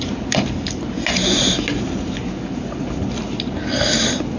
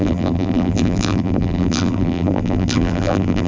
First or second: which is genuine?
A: first